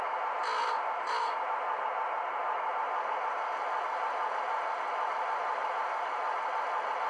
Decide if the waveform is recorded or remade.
recorded